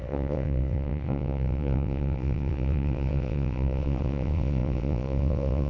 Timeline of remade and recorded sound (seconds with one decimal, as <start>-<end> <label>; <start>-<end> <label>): 0.0-5.7 remade